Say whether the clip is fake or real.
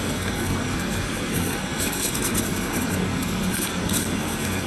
fake